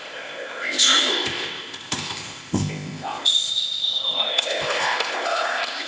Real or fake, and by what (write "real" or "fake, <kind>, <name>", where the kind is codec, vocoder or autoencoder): fake, codec, ZipCodec